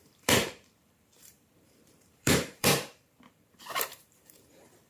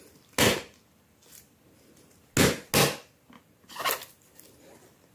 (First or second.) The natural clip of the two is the second